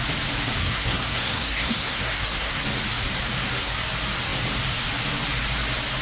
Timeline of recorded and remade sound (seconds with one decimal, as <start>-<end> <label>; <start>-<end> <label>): 0.0-0.6 recorded; 0.6-2.6 remade; 2.6-6.0 recorded